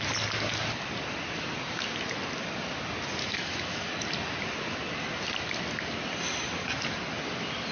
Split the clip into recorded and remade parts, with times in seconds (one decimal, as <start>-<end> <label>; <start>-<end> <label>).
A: 0.0-3.2 recorded; 3.2-3.9 remade; 3.9-7.7 recorded